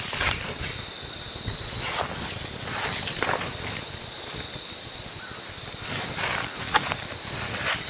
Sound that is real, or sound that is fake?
real